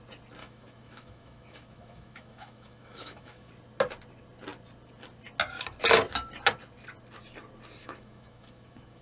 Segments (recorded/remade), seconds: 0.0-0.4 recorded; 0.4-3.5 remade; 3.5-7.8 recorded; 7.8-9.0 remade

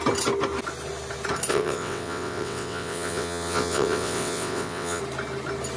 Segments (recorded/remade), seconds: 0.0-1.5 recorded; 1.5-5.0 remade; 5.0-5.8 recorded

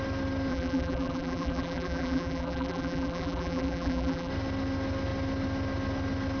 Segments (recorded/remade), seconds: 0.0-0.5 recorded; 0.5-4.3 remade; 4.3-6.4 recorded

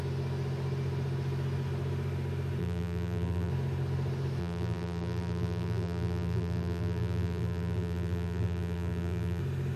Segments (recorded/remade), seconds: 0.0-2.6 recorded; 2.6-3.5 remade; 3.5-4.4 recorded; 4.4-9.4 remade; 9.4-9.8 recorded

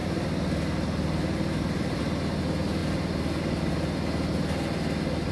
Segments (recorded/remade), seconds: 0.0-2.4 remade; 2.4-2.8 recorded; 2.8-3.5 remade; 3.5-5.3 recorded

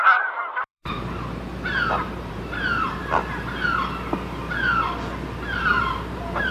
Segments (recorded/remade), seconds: 0.0-1.5 remade; 1.5-2.0 recorded; 2.0-3.0 remade; 3.0-5.6 recorded; 5.6-6.5 remade